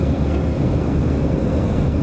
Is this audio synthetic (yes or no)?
yes